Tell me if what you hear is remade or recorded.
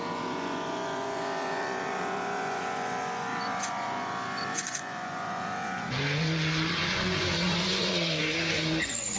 remade